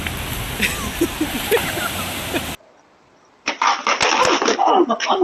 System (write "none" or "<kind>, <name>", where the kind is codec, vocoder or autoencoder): none